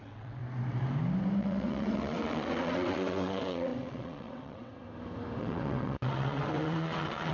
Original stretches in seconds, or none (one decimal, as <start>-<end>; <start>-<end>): 0.4-1.4; 4.7-5.4

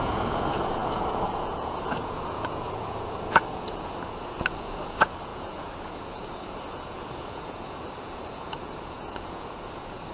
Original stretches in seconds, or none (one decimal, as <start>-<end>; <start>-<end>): none

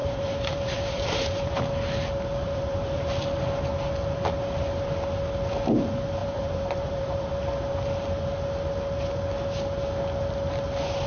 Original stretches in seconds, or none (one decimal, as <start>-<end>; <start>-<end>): 1.6-2.3; 3.0-6.2; 7.3-11.1

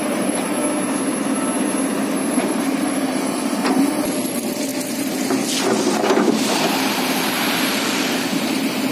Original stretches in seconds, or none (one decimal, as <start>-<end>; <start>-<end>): 0.6-2.3; 4.7-6.3

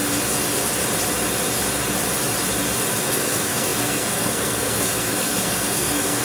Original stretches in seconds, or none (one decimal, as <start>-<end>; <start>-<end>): 0.0-3.0